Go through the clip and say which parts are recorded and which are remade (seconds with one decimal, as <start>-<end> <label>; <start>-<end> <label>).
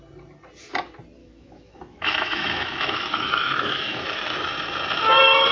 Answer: 0.0-1.2 recorded; 1.2-4.5 remade; 4.5-5.5 recorded